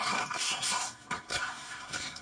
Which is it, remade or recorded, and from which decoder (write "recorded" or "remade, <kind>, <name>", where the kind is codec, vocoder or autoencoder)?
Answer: remade, codec, SNAC